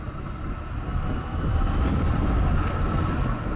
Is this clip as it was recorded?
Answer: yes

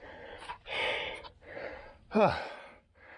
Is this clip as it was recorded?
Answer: yes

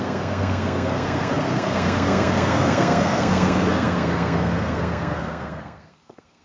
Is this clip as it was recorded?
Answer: no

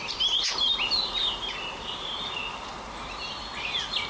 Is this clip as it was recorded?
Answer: yes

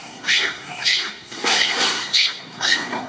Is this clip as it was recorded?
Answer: no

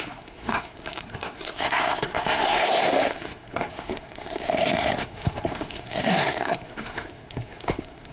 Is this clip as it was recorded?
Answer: no